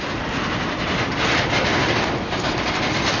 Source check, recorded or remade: recorded